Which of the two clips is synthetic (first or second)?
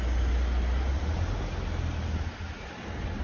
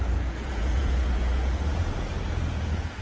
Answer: second